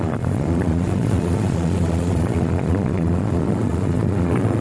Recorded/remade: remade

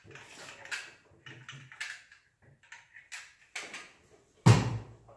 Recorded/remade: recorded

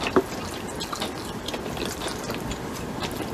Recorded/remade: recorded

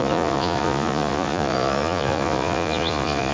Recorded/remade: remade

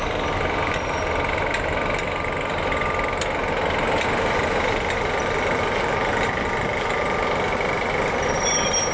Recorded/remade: recorded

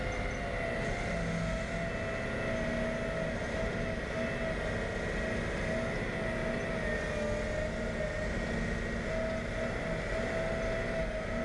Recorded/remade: recorded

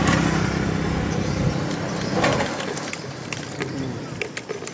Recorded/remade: recorded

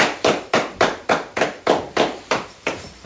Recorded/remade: remade